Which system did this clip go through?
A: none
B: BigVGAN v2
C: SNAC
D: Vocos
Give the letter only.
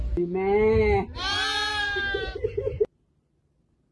A